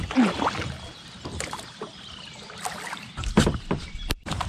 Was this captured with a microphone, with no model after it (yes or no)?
no